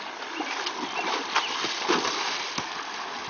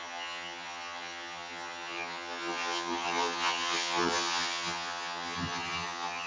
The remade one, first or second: second